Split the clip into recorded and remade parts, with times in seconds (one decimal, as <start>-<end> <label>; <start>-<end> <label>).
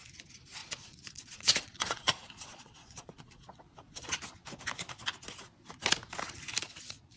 0.0-0.6 recorded; 0.6-4.2 remade; 4.2-6.6 recorded; 6.6-7.2 remade